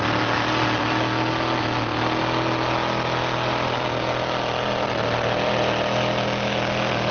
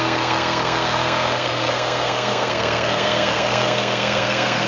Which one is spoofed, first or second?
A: second